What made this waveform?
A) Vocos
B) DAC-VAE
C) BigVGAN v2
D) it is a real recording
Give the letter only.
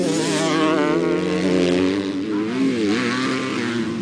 D